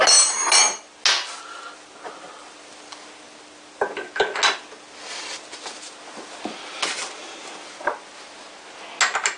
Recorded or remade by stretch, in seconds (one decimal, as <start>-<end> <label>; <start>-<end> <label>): 0.0-9.4 recorded